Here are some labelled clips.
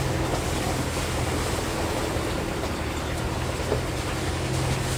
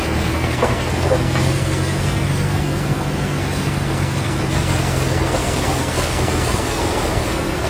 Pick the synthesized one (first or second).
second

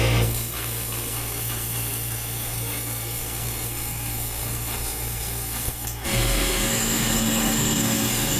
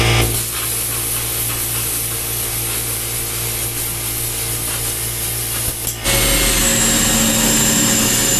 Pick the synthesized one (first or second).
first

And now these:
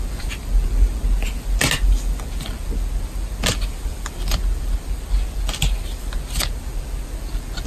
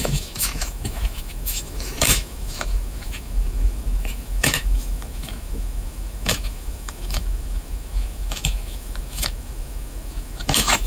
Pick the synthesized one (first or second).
second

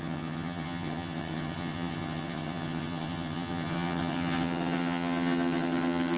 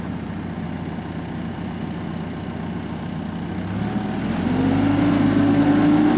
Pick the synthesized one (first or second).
first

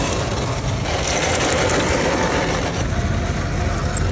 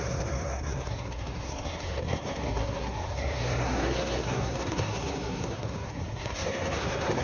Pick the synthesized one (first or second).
second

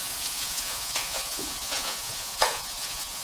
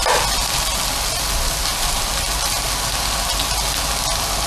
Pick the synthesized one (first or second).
first